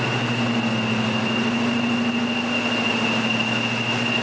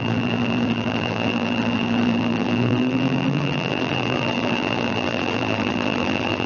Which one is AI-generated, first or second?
second